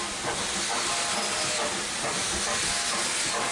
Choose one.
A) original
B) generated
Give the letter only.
A